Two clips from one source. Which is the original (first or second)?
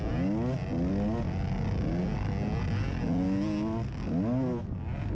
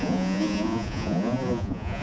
first